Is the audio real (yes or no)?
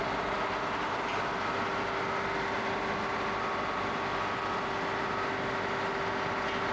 yes